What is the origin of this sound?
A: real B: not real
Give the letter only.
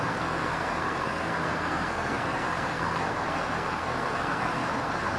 B